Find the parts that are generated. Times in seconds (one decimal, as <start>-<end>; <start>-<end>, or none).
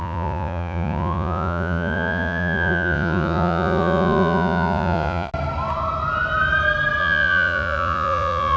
0.0-5.3; 7.0-8.6